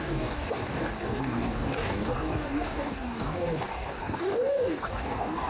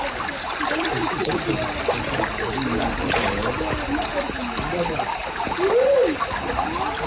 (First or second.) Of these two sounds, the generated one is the first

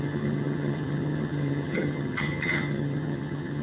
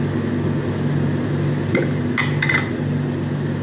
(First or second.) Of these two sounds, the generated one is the first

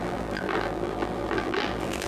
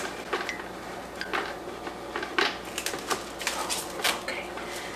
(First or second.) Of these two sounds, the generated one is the first